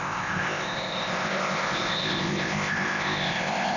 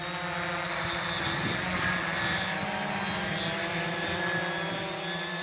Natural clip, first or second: second